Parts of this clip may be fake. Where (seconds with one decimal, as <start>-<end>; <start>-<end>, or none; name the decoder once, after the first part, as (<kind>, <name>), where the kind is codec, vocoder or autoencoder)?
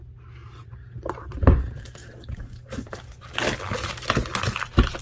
0.4-1.5 (vocoder, BigVGAN v2)